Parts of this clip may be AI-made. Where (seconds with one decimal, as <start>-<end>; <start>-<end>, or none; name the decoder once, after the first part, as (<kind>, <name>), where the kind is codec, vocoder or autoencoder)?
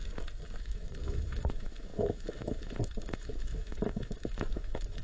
0.6-5.0 (autoencoder, DAC-VAE)